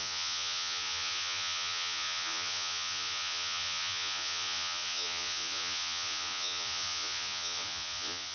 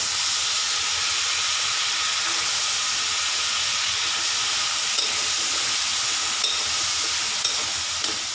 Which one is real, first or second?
second